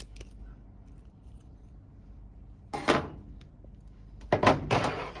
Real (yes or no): yes